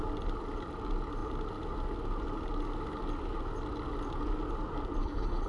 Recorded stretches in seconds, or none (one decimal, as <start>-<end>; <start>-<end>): 0.0-5.0